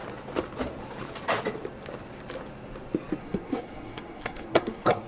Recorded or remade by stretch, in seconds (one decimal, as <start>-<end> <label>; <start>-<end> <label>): 0.0-3.2 recorded; 3.2-5.1 remade